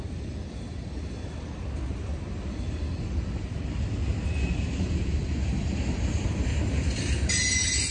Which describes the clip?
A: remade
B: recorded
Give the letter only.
B